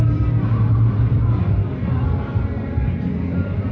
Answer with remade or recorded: recorded